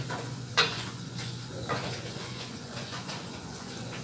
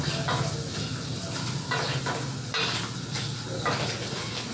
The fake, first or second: first